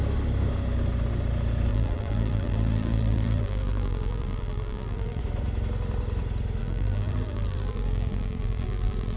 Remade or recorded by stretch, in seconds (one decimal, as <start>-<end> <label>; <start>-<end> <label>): 0.0-1.7 recorded; 1.7-5.2 remade; 5.2-6.6 recorded; 6.6-9.2 remade